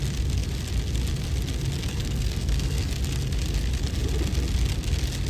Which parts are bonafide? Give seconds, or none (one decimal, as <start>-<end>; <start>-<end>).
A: 0.0-1.9; 2.9-5.3